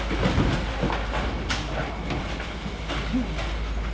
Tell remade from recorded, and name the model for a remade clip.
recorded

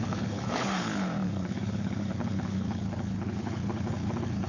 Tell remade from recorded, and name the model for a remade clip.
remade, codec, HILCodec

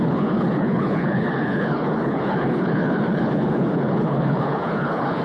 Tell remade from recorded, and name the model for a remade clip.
remade, codec, HILCodec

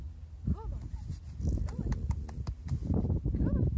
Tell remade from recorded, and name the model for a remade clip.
recorded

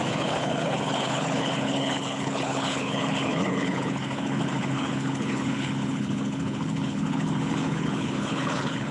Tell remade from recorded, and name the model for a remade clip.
remade, codec, HILCodec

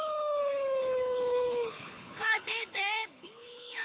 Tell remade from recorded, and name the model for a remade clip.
remade, codec, HILCodec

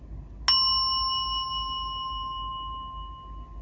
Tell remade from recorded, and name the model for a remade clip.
recorded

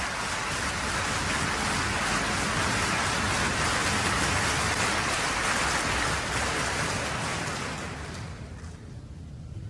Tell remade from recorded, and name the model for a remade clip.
recorded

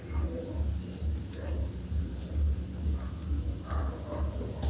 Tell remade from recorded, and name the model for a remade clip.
recorded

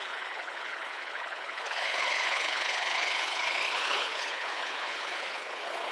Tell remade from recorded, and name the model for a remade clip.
remade, codec, HILCodec